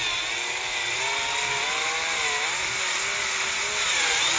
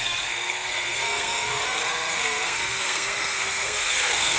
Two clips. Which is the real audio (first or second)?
first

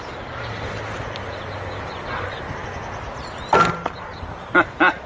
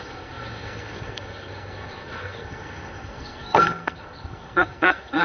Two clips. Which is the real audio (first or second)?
first